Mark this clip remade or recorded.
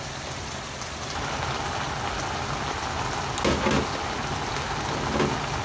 recorded